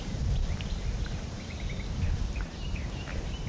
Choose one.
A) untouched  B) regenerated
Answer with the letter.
B